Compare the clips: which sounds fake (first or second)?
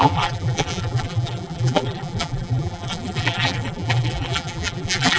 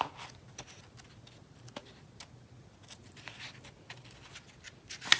first